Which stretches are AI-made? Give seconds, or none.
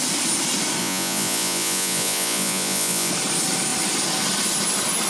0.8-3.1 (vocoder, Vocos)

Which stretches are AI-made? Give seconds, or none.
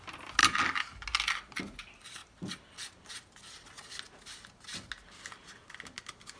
2.2-3.1 (vocoder, BigVGAN v2)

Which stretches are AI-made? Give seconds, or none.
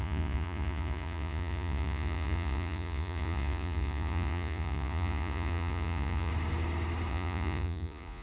0.0-6.3 (vocoder, Vocos); 7.1-8.2